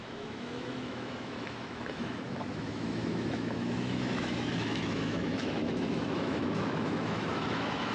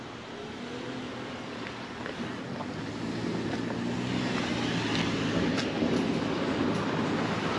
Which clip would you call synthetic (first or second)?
first